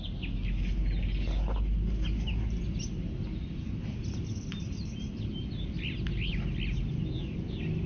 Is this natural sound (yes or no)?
yes